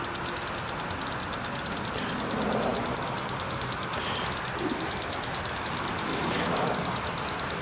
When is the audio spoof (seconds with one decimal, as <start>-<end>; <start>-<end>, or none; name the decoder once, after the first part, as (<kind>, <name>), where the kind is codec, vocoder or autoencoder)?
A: 6.1-6.7 (autoencoder, DAC-VAE)